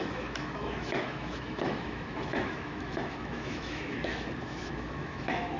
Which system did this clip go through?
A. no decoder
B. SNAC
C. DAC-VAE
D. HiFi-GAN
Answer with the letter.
C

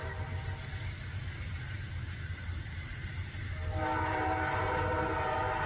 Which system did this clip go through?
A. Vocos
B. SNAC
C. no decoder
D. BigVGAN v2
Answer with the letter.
C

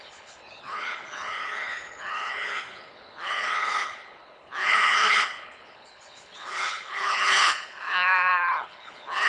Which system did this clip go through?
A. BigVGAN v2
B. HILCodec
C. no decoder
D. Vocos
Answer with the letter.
B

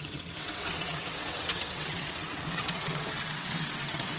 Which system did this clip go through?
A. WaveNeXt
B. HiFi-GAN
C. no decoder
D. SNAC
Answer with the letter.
A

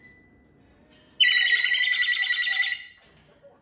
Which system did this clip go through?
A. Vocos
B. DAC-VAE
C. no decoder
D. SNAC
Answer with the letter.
C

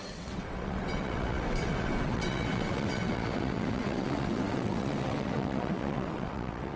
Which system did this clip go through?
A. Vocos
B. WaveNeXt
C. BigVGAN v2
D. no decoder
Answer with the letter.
B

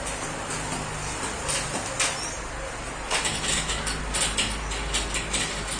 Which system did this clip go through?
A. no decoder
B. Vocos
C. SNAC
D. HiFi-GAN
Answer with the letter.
A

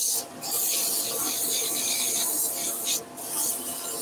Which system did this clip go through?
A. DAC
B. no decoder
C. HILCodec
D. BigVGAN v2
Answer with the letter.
B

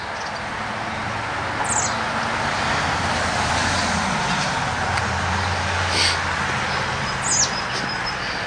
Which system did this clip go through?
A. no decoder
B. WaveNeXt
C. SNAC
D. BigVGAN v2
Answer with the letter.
A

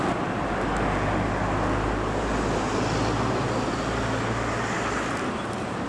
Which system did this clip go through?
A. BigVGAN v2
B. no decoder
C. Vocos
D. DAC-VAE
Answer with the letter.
B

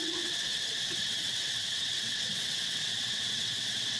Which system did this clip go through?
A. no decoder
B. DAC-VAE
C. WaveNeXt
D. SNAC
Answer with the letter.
C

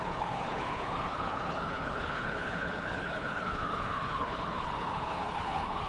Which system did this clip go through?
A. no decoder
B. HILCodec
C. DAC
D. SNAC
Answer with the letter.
B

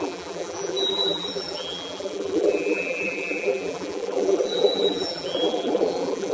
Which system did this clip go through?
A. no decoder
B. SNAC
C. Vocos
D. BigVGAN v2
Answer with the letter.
D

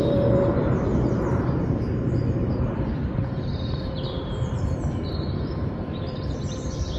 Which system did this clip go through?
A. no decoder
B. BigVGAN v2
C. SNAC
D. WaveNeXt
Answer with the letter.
B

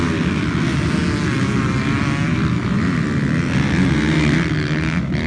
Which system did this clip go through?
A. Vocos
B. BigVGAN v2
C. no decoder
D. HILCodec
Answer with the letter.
C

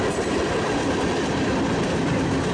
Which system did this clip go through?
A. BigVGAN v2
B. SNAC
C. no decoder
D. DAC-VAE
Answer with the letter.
C